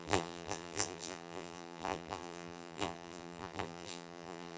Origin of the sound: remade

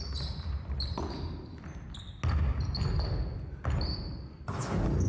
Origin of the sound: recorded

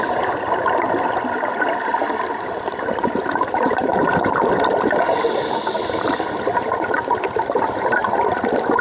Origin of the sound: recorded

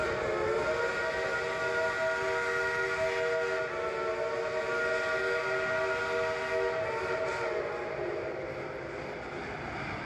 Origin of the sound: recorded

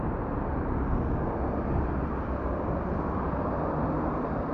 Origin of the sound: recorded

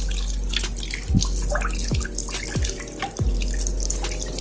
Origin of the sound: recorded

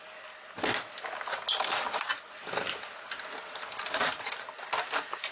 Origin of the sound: recorded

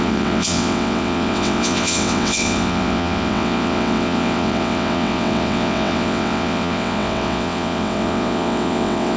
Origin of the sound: remade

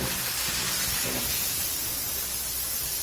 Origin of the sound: recorded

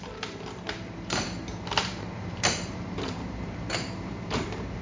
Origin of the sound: remade